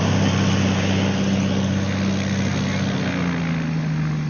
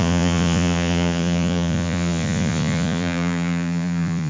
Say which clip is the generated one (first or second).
second